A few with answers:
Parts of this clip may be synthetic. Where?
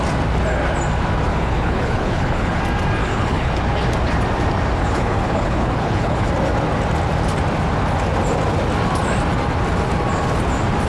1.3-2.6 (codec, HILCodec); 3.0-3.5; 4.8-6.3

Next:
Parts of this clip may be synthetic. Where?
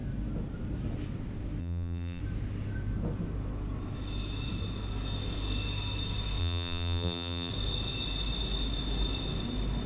1.6-2.2 (vocoder, BigVGAN v2); 6.4-7.5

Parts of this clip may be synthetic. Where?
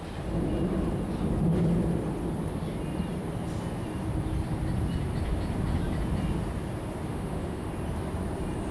7.1-7.7 (autoencoder, DAC-VAE)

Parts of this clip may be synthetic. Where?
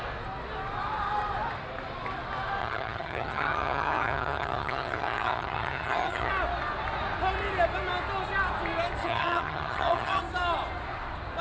2.6-6.3 (vocoder, HiFi-GAN); 9.0-10.2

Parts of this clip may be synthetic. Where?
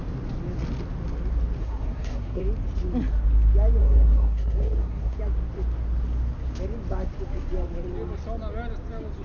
1.6-2.4 (codec, SNAC); 3.8-5.2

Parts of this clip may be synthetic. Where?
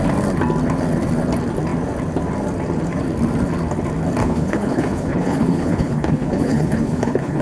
4.2-7.4 (codec, HILCodec)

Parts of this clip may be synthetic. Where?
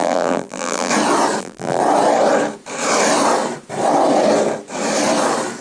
0.0-0.9 (vocoder, BigVGAN v2); 1.4-1.8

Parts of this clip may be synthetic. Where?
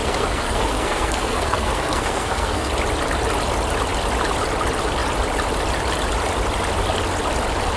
0.0-2.7 (codec, SNAC)